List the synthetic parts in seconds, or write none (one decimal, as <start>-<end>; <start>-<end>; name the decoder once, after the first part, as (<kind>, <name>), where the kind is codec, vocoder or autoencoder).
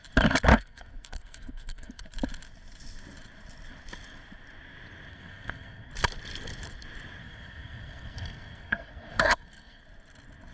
0.5-2.0 (codec, SNAC); 5.1-5.9; 7.2-9.8